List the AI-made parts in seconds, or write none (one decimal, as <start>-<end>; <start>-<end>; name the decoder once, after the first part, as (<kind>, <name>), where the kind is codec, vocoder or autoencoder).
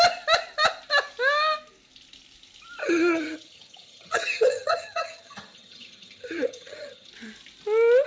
2.8-7.1 (vocoder, HiFi-GAN)